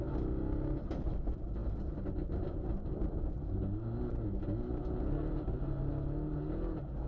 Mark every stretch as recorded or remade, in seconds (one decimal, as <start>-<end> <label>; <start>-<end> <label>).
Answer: 0.0-7.1 recorded

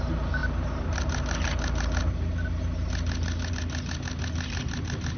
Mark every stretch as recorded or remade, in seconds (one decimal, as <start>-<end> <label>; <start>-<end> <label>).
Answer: 0.0-5.2 recorded

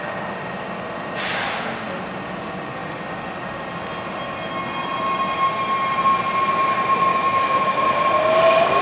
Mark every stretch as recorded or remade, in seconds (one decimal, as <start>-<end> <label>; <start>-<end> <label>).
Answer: 0.0-7.1 recorded; 7.1-8.0 remade; 8.0-8.8 recorded

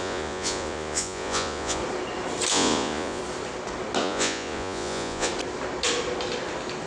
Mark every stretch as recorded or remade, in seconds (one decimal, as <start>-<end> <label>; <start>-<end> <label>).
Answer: 0.0-1.8 remade; 1.8-2.5 recorded; 2.5-3.2 remade; 3.2-4.0 recorded; 4.0-5.3 remade; 5.3-6.9 recorded